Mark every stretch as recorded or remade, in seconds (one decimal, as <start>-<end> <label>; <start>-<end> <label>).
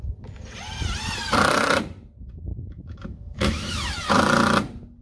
0.0-2.5 recorded; 2.5-4.2 remade; 4.2-5.0 recorded